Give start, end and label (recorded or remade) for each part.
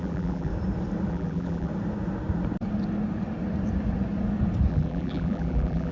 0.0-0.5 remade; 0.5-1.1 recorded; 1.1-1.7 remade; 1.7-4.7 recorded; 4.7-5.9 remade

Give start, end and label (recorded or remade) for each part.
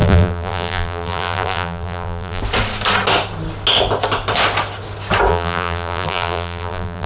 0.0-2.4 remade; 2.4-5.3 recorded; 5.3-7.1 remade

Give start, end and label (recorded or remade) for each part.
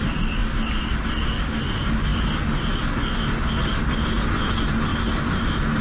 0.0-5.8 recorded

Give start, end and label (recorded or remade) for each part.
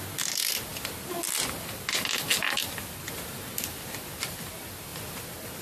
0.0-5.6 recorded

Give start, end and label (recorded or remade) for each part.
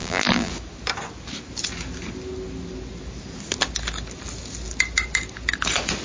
0.0-0.5 remade; 0.5-6.0 recorded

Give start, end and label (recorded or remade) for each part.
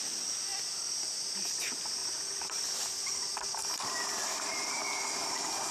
0.0-5.7 recorded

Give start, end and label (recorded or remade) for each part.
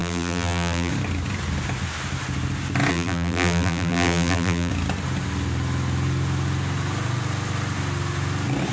0.0-0.9 remade; 0.9-2.9 recorded; 2.9-4.7 remade; 4.7-8.7 recorded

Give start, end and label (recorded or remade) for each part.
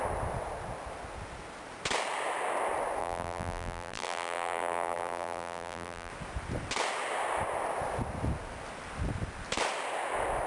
0.0-3.0 recorded; 3.0-6.1 remade; 6.1-10.5 recorded